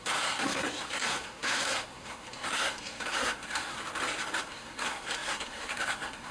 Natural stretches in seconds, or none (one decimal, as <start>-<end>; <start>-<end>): 3.8-4.4